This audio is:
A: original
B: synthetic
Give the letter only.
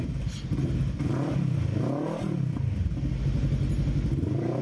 A